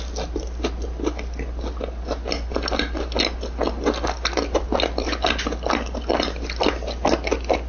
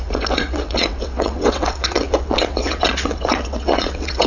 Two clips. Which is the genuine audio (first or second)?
first